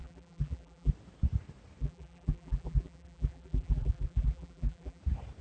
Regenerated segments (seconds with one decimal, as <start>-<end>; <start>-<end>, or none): 0.0-0.9; 1.8-5.0